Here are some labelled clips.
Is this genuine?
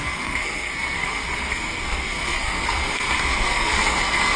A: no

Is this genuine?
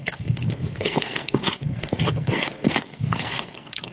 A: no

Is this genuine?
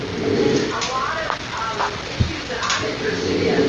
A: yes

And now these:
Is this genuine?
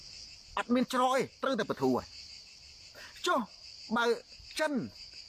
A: yes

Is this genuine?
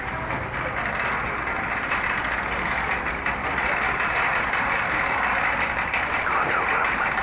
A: yes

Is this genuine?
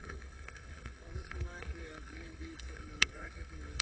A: no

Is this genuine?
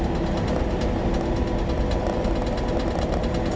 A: yes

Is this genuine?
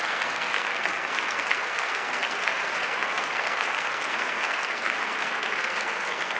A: no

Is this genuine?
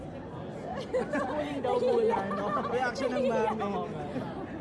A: yes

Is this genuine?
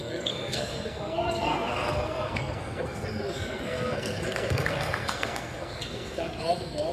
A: no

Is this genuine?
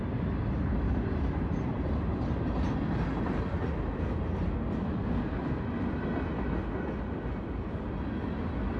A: yes